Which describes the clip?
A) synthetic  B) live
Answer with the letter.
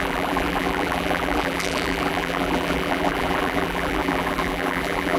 A